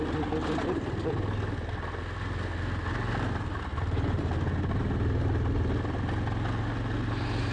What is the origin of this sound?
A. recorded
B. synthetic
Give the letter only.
A